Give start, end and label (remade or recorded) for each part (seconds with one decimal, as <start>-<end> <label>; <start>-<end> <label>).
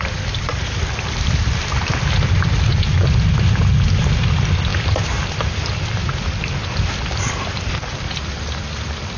0.0-9.2 remade